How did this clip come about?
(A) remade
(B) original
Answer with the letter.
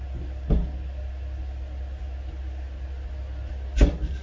B